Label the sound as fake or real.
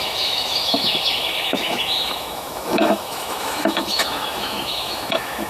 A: fake